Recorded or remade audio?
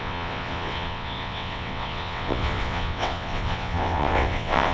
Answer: remade